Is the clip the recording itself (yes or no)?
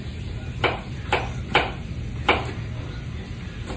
yes